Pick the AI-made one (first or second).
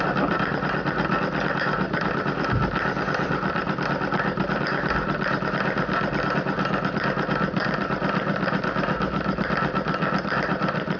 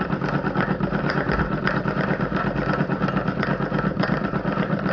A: second